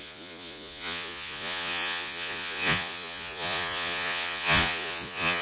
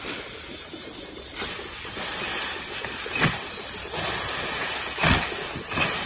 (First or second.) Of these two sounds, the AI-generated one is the first